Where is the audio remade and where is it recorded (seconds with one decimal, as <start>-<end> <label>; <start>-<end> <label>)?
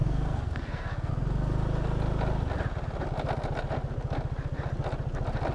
0.0-1.1 remade; 1.1-5.5 recorded